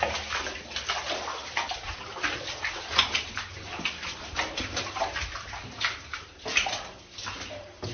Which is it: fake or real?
real